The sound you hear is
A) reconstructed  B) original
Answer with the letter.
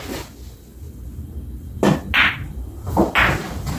B